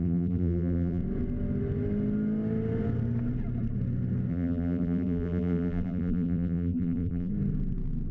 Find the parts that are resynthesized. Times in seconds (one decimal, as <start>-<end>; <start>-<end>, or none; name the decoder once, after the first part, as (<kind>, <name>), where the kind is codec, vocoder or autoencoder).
0.0-1.0 (vocoder, BigVGAN v2); 4.3-7.3